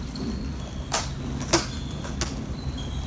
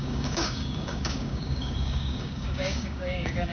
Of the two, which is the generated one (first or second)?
second